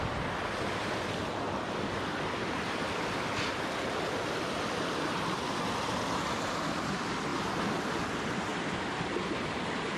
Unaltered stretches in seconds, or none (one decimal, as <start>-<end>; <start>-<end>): 0.0-10.0